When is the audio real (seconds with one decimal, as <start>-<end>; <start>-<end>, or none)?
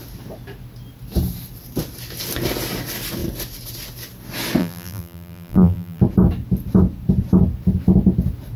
0.0-4.6; 6.0-8.6